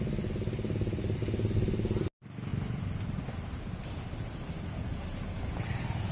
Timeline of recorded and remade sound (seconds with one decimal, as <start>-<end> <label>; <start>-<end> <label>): 0.0-6.1 recorded